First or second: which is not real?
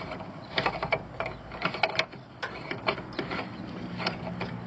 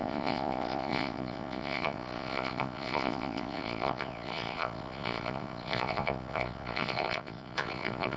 second